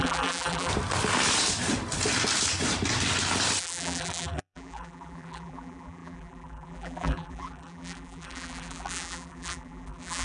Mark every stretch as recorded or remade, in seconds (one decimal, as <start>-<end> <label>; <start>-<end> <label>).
0.0-0.7 remade; 0.7-3.6 recorded; 3.6-10.2 remade